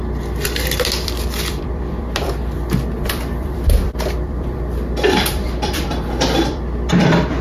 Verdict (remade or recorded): remade